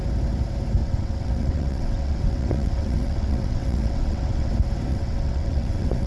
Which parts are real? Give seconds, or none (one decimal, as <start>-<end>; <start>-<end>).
0.0-0.8; 4.5-4.9